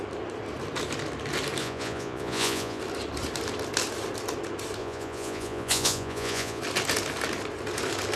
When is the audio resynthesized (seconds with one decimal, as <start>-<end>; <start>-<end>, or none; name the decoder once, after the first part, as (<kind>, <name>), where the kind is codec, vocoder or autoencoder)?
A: 1.6-2.8 (vocoder, Vocos); 4.8-6.6